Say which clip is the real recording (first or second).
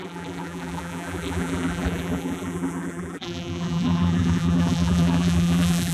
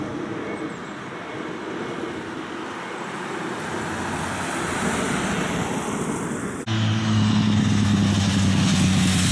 second